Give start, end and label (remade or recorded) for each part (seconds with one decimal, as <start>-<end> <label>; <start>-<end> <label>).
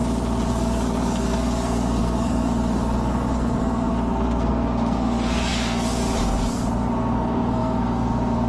0.0-0.5 recorded; 0.5-6.0 remade; 6.0-6.5 recorded; 6.5-8.5 remade